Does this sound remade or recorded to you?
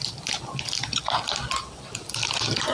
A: recorded